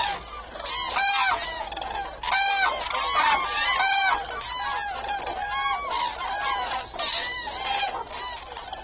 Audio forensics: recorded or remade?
recorded